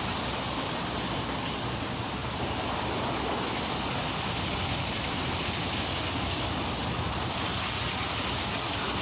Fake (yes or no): no